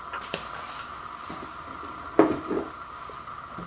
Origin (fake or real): real